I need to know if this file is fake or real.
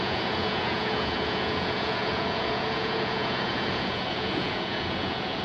fake